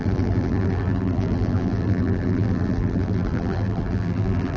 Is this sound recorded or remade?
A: remade